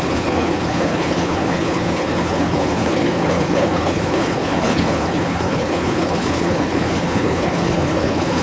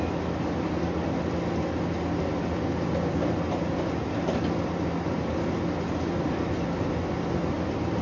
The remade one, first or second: first